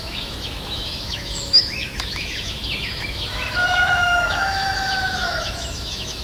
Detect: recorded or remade remade